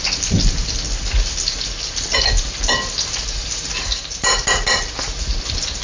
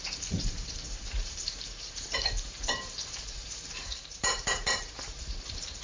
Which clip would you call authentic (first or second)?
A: first